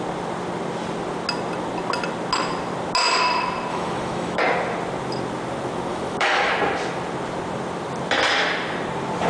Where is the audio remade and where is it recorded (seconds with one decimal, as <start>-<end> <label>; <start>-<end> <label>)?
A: 0.0-3.7 recorded; 3.7-4.4 remade; 4.4-5.9 recorded; 5.9-6.5 remade; 6.5-9.3 recorded